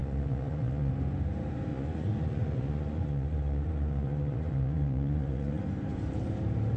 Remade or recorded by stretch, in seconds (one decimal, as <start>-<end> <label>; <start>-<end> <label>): 0.0-0.9 remade; 0.9-1.7 recorded; 1.7-5.6 remade; 5.6-6.8 recorded

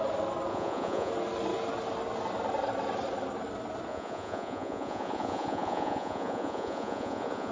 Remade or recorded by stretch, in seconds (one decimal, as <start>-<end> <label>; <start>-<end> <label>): 0.0-0.5 recorded; 0.5-1.1 remade; 1.1-3.9 recorded; 3.9-7.5 remade

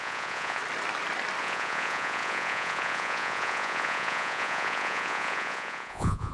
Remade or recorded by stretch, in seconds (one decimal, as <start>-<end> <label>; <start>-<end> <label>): 0.0-0.6 remade; 0.6-1.4 recorded; 1.4-6.3 remade

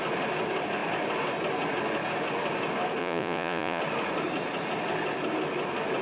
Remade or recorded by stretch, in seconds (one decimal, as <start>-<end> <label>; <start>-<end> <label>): 0.0-3.0 recorded; 3.0-3.8 remade; 3.8-6.0 recorded

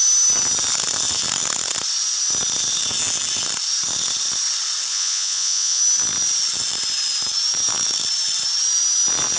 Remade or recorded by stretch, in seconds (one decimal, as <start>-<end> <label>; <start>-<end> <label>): 0.0-4.9 recorded; 4.9-5.8 remade; 5.8-9.4 recorded